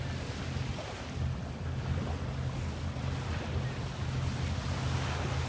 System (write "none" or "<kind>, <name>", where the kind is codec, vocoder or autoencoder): none